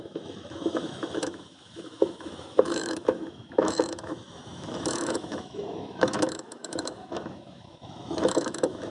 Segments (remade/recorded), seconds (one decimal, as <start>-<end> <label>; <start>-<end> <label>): 0.0-8.9 remade